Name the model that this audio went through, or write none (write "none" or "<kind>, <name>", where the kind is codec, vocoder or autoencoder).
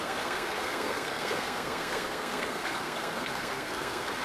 codec, SNAC